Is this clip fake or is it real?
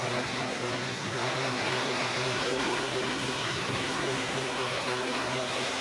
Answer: fake